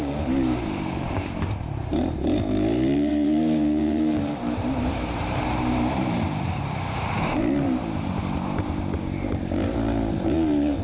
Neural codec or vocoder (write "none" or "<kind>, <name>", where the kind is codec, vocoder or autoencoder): vocoder, BigVGAN v2